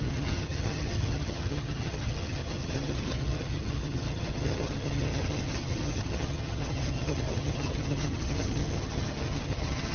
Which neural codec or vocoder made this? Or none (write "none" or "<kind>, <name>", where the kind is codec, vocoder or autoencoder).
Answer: vocoder, HiFi-GAN